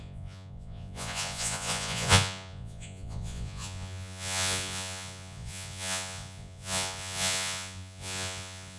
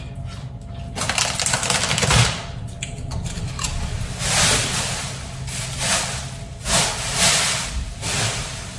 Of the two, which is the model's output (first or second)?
first